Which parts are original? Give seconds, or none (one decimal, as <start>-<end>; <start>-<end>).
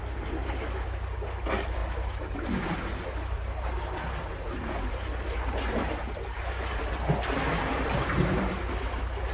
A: 0.0-9.3